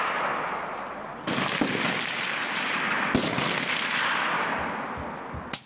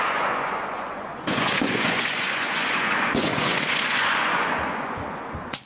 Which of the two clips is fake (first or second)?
second